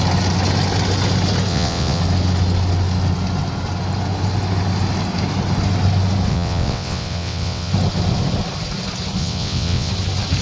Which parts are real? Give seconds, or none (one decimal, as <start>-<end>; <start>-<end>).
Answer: 0.0-1.5; 2.0-6.3; 7.7-9.2; 9.9-10.4